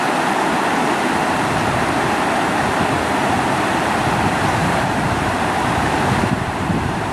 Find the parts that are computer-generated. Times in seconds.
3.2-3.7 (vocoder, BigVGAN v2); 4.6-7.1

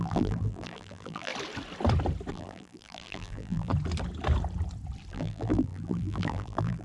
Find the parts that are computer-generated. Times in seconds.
0.0-1.3 (vocoder, BigVGAN v2); 2.3-3.7; 5.1-6.8